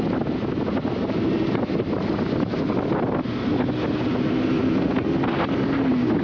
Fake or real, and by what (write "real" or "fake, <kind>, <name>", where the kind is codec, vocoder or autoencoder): real